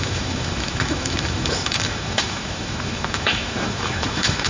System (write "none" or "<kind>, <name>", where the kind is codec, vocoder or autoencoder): autoencoder, DAC-VAE